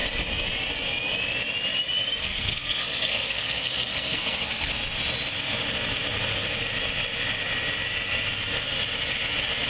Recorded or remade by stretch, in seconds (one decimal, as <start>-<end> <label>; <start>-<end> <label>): 0.0-2.2 recorded; 2.2-4.7 remade; 4.7-9.7 recorded